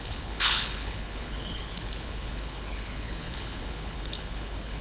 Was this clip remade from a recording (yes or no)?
yes